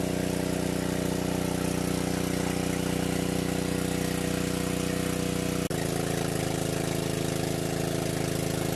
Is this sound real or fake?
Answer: real